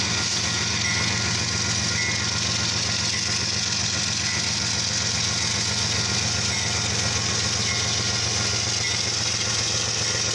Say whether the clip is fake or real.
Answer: real